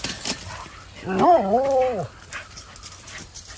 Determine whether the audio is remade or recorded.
recorded